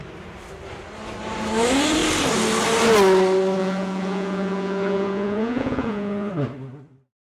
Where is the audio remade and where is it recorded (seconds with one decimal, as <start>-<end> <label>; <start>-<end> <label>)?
0.0-3.6 recorded; 3.6-6.3 remade; 6.3-7.3 recorded